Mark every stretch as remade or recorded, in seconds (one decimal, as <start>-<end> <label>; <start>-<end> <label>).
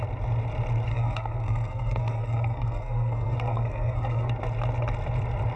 0.0-0.9 recorded; 0.9-4.3 remade; 4.3-5.6 recorded